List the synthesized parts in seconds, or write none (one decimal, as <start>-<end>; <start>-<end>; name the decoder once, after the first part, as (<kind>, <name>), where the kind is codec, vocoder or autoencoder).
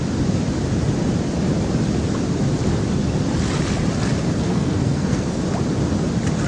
4.5-5.4 (codec, SNAC)